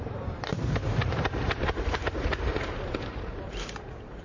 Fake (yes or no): yes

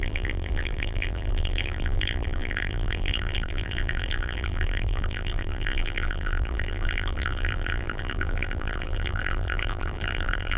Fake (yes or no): yes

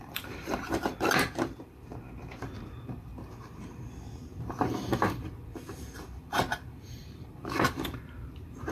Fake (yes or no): yes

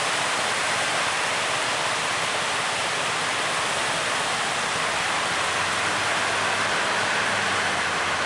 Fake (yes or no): no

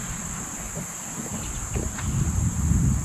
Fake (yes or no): no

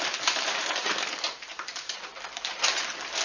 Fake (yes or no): yes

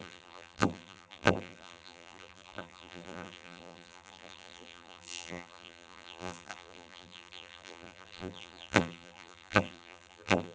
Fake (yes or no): yes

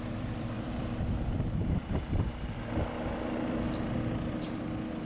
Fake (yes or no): yes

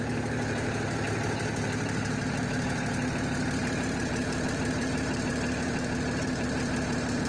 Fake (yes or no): yes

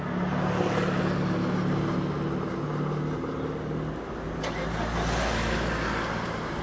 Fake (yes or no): no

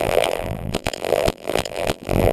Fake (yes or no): yes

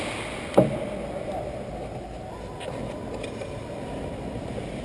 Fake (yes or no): no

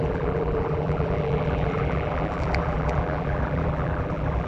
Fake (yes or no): yes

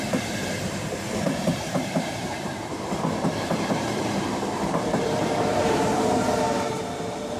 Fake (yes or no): yes